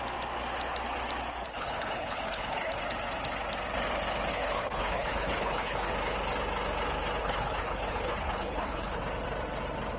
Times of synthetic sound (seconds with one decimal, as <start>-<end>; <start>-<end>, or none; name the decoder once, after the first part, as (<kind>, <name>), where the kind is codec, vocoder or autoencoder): 1.4-2.8 (codec, HILCodec); 4.3-5.9; 7.2-9.0

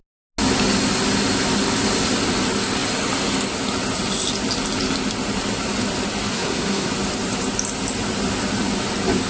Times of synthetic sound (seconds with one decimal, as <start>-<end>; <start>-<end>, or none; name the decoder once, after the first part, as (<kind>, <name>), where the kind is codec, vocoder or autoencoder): 6.3-6.9 (codec, SNAC)

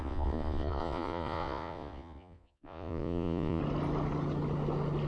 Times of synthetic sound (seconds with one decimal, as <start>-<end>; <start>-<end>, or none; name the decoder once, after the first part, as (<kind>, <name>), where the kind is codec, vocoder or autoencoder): 0.0-3.6 (vocoder, Vocos)